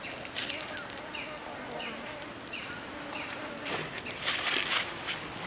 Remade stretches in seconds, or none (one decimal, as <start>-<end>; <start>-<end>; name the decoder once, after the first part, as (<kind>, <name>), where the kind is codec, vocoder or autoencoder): 1.4-4.7 (vocoder, BigVGAN v2)